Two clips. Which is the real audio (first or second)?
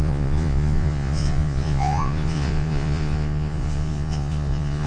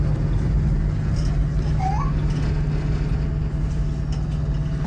second